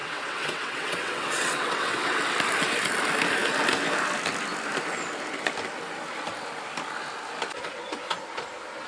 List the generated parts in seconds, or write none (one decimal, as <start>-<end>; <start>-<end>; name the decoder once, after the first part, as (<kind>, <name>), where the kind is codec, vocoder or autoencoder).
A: 0.0-2.2 (vocoder, WaveNeXt)